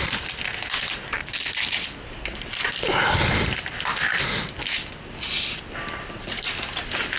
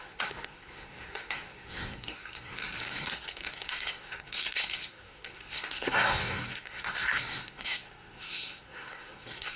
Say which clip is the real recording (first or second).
first